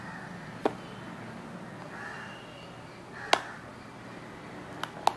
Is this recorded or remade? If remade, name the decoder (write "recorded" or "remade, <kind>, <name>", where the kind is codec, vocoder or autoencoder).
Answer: recorded